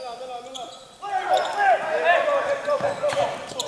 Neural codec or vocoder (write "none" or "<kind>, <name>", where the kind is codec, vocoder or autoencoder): none